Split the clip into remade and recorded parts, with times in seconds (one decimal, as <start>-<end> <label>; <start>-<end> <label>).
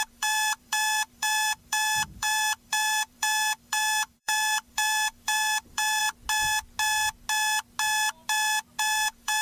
0.0-6.0 remade; 6.0-8.8 recorded; 8.8-9.4 remade